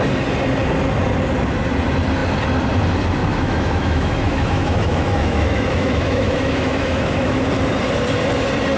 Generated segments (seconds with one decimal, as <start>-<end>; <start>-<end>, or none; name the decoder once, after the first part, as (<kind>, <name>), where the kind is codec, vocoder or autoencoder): 3.2-7.5 (autoencoder, DAC-VAE)